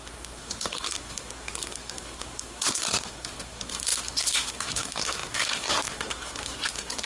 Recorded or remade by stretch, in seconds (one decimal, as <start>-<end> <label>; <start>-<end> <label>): 0.0-7.1 remade